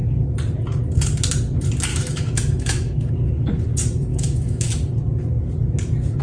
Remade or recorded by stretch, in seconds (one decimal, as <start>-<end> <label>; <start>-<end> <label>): 0.0-1.9 recorded; 1.9-3.1 remade; 3.1-4.1 recorded; 4.1-4.7 remade; 4.7-6.2 recorded